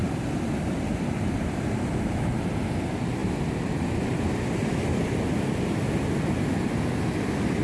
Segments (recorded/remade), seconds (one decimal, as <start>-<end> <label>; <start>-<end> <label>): 0.0-7.6 recorded